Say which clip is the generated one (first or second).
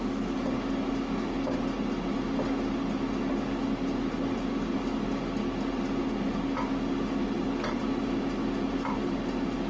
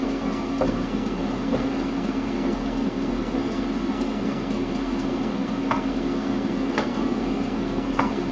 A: second